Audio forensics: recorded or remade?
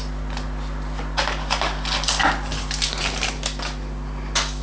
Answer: recorded